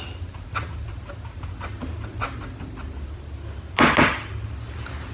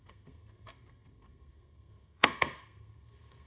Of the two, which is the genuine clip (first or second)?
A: first